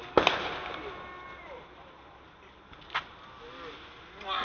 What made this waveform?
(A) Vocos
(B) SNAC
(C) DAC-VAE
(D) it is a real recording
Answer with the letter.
D